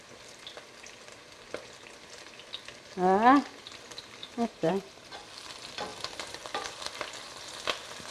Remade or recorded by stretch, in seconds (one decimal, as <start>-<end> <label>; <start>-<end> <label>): 0.0-4.2 recorded; 4.2-4.7 remade; 4.7-5.9 recorded; 5.9-7.1 remade; 7.1-8.1 recorded